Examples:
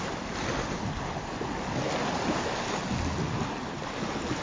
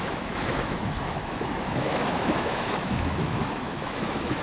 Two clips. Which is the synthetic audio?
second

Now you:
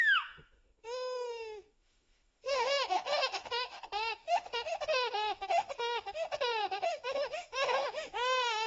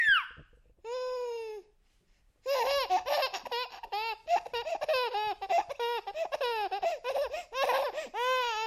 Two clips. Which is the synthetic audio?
first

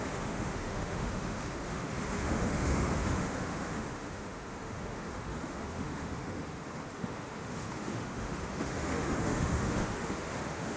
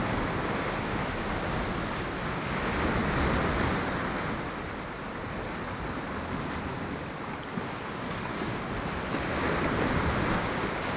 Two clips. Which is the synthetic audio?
first